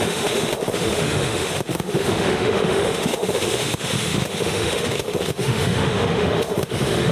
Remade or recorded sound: remade